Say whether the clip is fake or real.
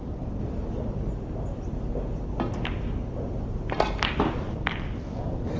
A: real